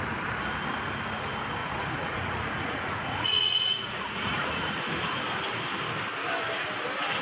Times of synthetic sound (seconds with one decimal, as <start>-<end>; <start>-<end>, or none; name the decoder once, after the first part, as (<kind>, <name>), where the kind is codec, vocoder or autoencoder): 1.6-4.8 (vocoder, Vocos)